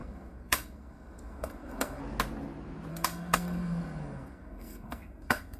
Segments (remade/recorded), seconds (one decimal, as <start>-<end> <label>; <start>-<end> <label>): 0.0-2.0 remade; 2.0-2.9 recorded; 2.9-5.6 remade

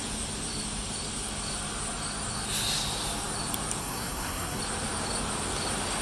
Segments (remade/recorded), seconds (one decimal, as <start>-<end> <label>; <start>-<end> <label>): 0.0-3.8 recorded; 3.8-4.6 remade; 4.6-6.0 recorded

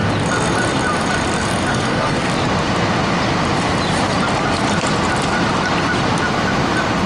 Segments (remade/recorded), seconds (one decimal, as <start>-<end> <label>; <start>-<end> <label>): 0.0-1.7 recorded; 1.7-2.3 remade; 2.3-7.1 recorded